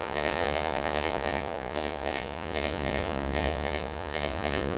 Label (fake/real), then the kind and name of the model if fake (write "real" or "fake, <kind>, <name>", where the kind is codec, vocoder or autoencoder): fake, vocoder, Vocos